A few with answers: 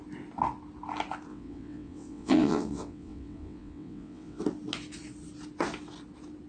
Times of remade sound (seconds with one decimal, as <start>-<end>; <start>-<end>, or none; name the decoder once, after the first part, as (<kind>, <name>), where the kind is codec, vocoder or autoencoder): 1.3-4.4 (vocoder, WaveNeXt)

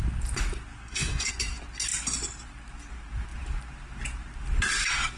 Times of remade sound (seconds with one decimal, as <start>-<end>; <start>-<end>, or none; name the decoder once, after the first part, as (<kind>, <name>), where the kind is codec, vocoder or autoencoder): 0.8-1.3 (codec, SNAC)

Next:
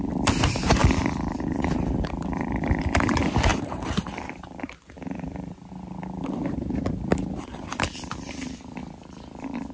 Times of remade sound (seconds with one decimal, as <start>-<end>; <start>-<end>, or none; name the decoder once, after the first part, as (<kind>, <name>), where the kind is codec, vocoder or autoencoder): 0.8-2.8 (vocoder, BigVGAN v2); 3.5-5.7; 7.7-8.3